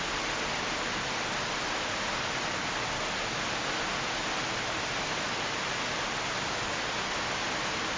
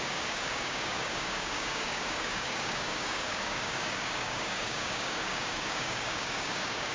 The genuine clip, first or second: first